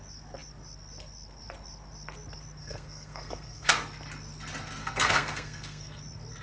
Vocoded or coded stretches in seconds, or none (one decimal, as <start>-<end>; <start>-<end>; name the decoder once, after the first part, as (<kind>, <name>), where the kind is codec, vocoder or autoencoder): 2.6-3.7 (codec, SNAC); 4.8-6.0